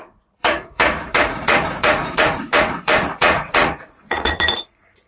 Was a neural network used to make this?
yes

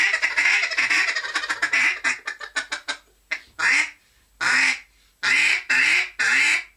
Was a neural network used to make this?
no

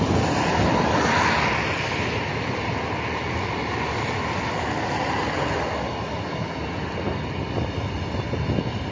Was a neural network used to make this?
no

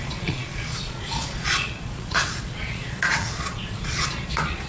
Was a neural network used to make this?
yes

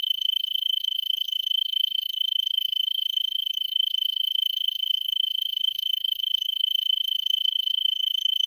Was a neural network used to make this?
yes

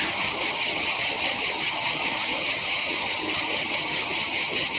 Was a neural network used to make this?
yes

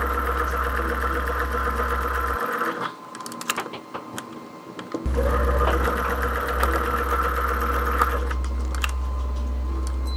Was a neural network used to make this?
no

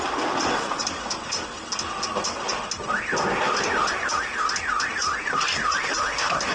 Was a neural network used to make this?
no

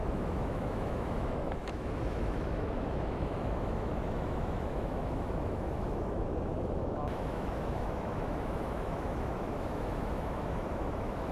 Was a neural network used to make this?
yes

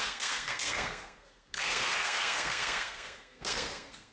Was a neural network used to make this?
yes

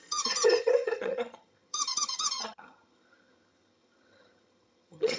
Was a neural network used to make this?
yes